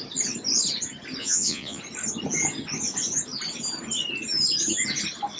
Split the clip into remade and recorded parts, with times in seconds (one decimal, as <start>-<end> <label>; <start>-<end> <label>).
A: 0.0-1.2 recorded; 1.2-1.8 remade; 1.8-5.4 recorded